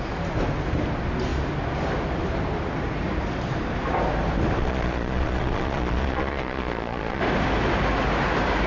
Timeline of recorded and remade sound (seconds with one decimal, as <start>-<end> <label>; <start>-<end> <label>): 0.0-4.6 recorded; 4.6-7.2 remade; 7.2-8.7 recorded